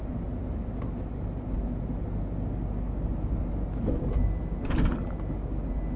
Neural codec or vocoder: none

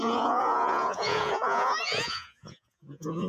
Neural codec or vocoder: vocoder, Vocos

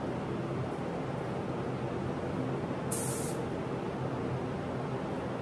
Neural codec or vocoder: none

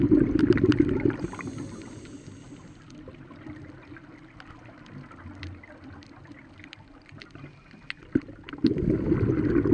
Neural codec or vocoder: none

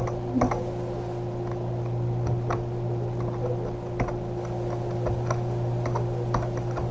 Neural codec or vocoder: none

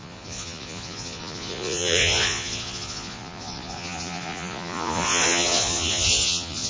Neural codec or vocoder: vocoder, Vocos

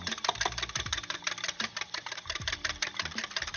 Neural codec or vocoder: none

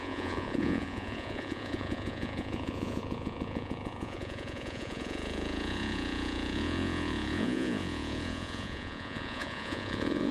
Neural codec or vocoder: vocoder, Vocos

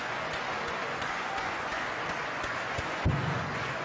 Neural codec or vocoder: vocoder, Vocos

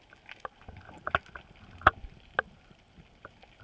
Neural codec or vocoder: none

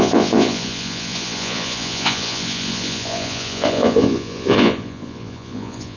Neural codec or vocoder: vocoder, Vocos